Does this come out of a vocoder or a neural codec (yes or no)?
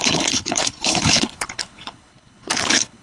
yes